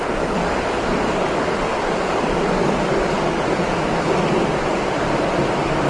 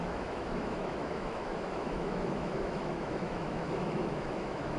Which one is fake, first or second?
second